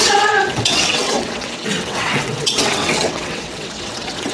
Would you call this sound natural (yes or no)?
no